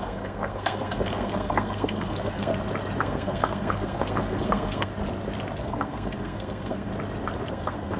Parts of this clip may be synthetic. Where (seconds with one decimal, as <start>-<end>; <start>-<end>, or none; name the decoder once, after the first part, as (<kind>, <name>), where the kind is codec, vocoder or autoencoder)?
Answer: 0.0-2.5 (codec, SNAC); 3.0-4.9; 5.6-6.9; 7.5-8.0